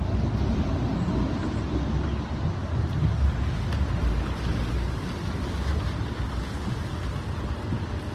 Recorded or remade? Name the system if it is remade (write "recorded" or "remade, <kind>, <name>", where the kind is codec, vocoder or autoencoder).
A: recorded